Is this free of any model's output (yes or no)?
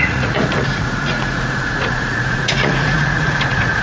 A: no